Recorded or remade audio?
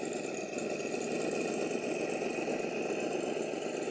recorded